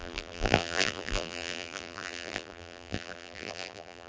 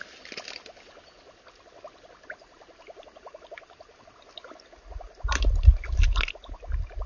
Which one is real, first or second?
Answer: second